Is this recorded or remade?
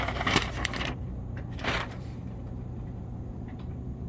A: remade